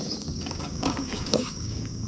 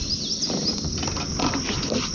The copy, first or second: first